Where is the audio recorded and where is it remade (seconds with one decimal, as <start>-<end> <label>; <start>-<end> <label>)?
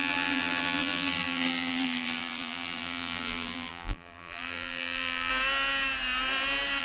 0.0-5.3 remade; 5.3-6.8 recorded